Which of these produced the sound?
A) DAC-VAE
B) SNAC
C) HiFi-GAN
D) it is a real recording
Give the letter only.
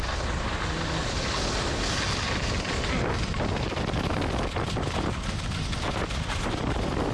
D